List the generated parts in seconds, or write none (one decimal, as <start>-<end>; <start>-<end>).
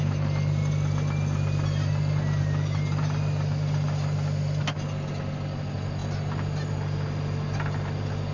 none